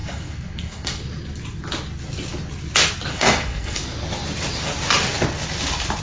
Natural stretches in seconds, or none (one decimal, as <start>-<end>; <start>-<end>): 1.0-3.1; 3.8-6.0